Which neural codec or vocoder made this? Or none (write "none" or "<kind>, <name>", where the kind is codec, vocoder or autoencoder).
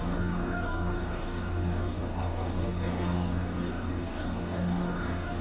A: codec, DAC